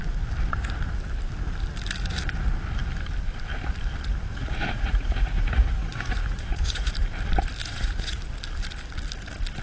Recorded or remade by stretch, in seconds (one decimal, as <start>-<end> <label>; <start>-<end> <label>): 0.0-4.3 recorded; 4.3-6.9 remade; 6.9-7.6 recorded; 7.6-8.2 remade; 8.2-9.6 recorded